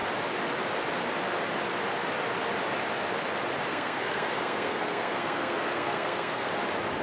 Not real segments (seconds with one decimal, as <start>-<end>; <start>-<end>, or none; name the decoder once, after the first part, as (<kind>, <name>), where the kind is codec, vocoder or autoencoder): 3.7-6.5 (codec, SNAC)